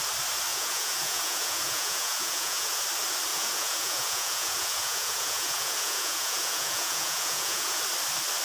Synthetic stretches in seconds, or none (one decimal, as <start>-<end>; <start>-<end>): 0.5-2.8; 3.3-7.8

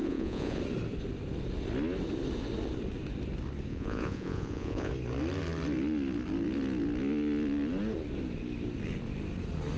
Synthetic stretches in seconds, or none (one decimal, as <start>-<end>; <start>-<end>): 0.0-0.6; 3.7-4.9

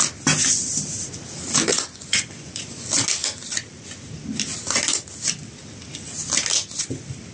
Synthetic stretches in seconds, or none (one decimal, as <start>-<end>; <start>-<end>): 1.7-2.7

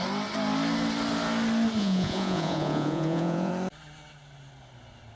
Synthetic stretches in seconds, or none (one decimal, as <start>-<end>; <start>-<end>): 1.8-3.5

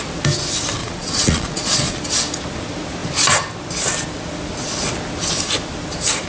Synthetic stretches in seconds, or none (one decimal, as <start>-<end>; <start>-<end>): 0.8-2.0

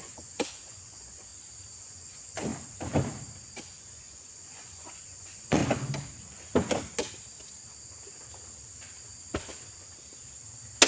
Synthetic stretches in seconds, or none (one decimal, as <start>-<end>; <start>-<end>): 0.0-1.3; 1.8-2.5; 3.8-5.6